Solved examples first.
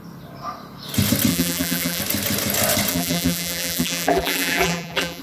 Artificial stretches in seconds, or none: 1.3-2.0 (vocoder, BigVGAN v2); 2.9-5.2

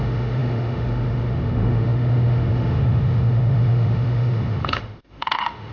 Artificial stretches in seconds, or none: 0.0-5.7 (autoencoder, DAC-VAE)

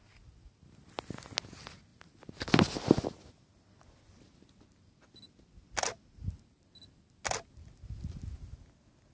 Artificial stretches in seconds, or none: none

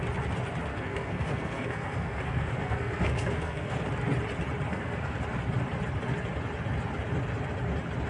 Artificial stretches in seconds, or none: 0.7-3.8 (codec, SNAC); 4.7-5.2

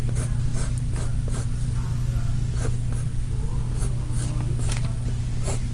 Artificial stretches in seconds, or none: none

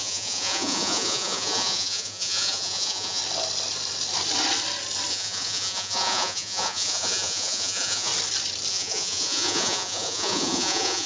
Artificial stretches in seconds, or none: 0.0-3.2 (vocoder, Vocos); 5.1-8.1; 8.7-11.1